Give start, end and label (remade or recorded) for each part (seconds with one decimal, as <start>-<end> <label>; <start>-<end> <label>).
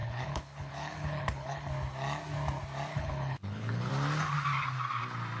0.0-1.7 remade; 1.7-2.9 recorded; 2.9-3.9 remade; 3.9-5.4 recorded